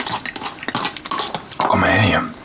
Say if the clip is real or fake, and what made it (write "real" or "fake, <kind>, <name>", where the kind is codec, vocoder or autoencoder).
real